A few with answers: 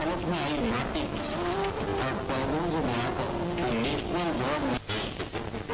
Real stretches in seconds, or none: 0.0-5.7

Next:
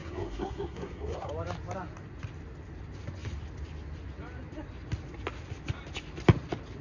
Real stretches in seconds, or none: 1.3-6.8